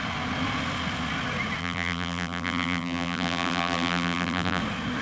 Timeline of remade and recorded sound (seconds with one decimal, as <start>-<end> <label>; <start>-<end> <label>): 0.0-1.6 recorded; 1.6-4.6 remade; 4.6-5.0 recorded